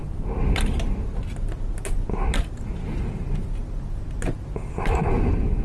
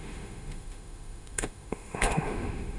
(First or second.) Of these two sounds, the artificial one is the second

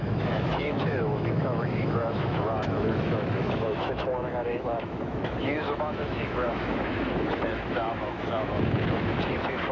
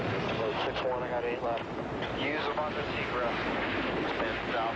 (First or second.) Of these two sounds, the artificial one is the first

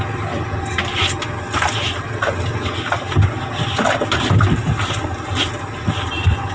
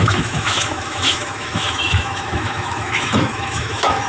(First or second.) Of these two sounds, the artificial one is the second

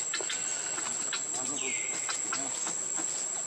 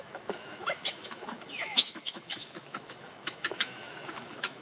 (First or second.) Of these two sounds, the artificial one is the second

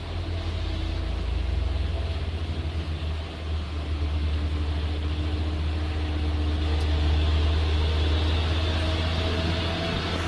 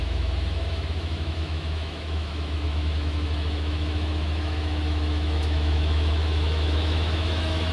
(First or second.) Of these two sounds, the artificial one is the second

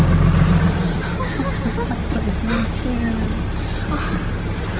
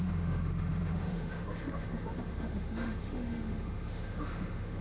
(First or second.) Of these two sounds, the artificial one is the second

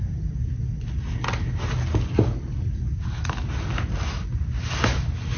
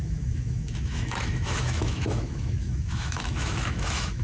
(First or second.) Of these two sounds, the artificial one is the second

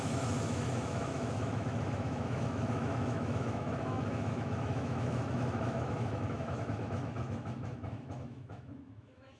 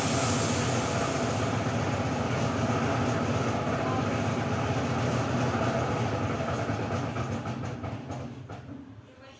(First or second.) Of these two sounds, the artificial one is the first